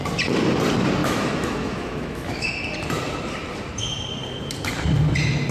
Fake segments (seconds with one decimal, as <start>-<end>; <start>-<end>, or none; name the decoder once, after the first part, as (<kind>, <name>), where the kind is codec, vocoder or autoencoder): 1.0-2.5 (autoencoder, DAC-VAE)